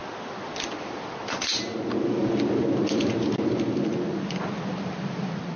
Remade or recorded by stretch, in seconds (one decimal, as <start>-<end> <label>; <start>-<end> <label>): 0.0-5.6 recorded